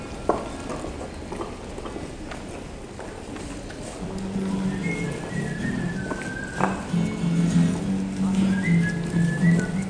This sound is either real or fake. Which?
real